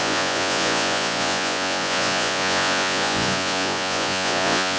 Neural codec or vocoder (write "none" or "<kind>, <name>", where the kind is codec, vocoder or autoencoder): vocoder, Vocos